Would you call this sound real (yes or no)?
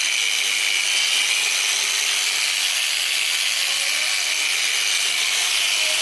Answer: yes